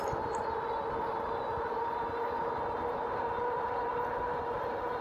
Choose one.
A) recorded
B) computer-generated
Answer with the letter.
A